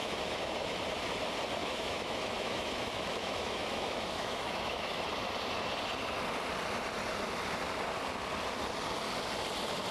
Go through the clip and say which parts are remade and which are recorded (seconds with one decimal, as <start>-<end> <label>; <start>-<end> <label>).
0.0-0.8 remade; 0.8-1.6 recorded; 1.6-5.1 remade; 5.1-9.9 recorded